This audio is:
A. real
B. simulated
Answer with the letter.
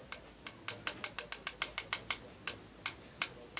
A